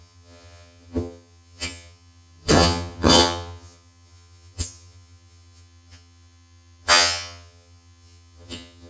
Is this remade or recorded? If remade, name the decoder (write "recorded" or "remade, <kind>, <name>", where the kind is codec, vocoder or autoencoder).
remade, vocoder, HiFi-GAN